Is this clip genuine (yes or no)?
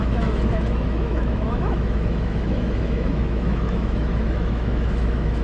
no